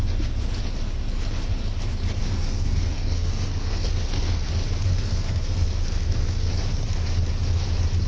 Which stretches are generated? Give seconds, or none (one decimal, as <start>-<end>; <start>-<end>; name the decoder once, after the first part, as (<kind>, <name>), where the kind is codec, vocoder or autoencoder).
2.2-4.5 (codec, SNAC); 4.9-6.5